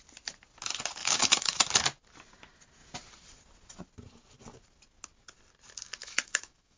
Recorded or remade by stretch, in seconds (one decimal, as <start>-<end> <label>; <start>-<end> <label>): 0.0-1.0 recorded; 1.0-1.6 remade; 1.6-6.0 recorded; 6.0-6.8 remade